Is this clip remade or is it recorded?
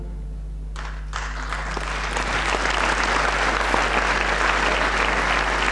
recorded